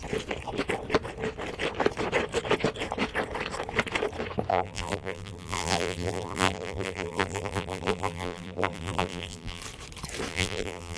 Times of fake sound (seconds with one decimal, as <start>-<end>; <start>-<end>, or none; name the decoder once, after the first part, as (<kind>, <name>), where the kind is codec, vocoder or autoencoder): 4.5-9.6 (vocoder, BigVGAN v2); 10.3-11.0